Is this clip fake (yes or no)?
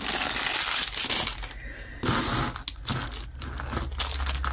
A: no